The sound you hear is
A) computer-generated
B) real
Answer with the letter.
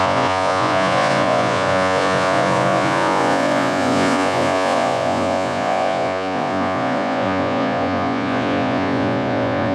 A